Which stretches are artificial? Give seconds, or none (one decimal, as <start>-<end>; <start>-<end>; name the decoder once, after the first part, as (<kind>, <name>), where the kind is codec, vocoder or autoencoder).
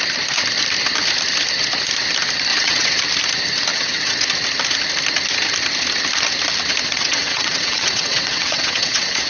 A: 2.5-3.0 (vocoder, WaveNeXt); 3.7-4.3; 6.9-9.3